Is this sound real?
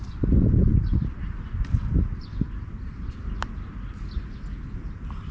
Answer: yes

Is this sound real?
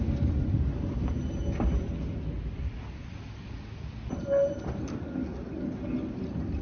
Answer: yes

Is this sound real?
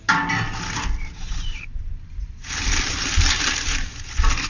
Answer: yes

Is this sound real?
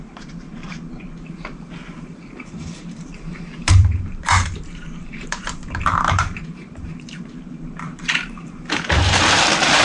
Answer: no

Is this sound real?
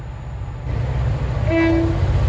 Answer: yes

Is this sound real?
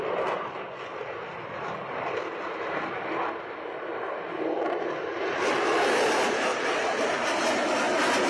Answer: no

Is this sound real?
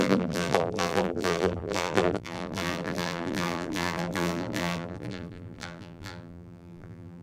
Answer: no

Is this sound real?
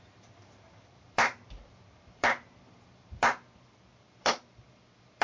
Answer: no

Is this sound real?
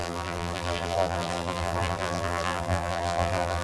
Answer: no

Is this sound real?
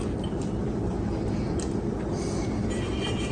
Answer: no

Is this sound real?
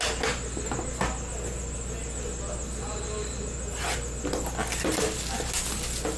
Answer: yes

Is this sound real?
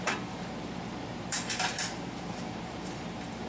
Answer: no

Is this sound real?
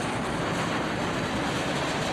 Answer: yes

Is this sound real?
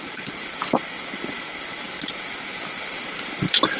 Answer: yes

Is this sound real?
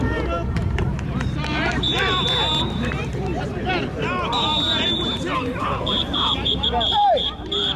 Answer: no